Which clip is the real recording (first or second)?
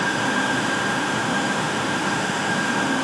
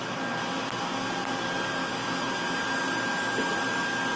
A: second